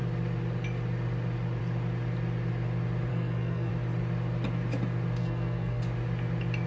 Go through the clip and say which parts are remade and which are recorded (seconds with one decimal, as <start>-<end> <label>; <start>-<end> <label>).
0.0-3.1 recorded; 3.1-3.7 remade; 3.7-5.2 recorded; 5.2-5.8 remade; 5.8-6.7 recorded